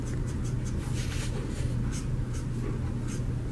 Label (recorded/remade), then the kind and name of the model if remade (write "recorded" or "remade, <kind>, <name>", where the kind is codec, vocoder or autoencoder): recorded